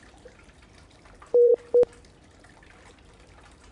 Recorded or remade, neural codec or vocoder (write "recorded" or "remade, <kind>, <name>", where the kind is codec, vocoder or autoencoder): remade, vocoder, BigVGAN v2